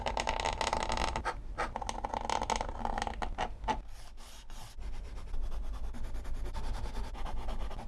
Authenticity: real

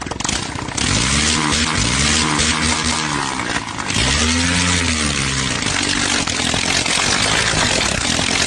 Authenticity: real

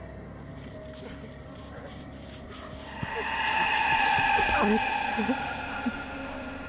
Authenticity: real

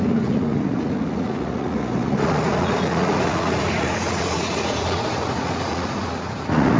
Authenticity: fake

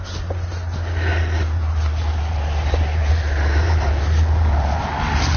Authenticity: real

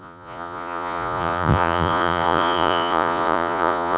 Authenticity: fake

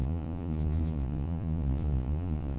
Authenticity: fake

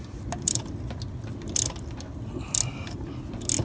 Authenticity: real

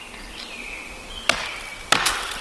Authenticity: real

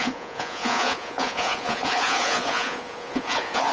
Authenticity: fake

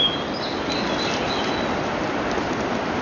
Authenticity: real